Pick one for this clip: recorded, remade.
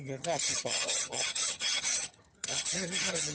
remade